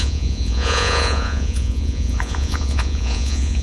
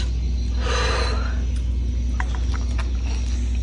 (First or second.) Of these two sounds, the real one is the second